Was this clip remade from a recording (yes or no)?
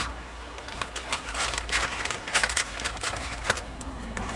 yes